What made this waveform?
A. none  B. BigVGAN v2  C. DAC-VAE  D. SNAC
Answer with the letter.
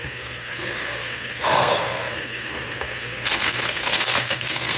D